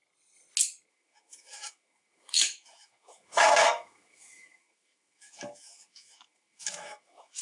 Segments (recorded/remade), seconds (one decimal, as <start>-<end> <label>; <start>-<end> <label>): 0.0-0.9 recorded; 0.9-7.4 remade

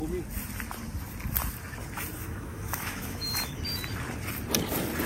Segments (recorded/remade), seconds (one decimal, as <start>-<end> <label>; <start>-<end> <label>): 0.0-2.2 recorded; 2.2-3.6 remade; 3.6-5.1 recorded